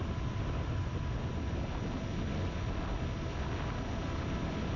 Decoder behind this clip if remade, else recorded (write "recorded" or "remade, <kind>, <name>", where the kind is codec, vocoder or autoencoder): recorded